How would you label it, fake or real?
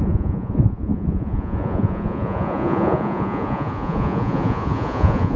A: fake